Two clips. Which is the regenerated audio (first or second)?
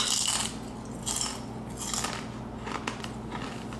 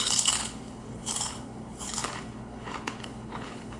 second